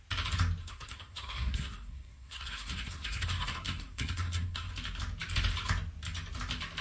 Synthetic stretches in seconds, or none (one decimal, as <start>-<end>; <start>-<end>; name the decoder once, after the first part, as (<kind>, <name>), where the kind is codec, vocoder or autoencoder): 0.6-4.7 (codec, SNAC)